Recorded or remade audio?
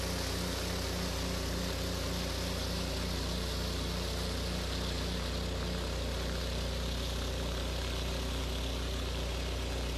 recorded